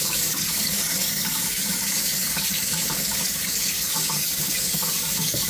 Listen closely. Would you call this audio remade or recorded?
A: remade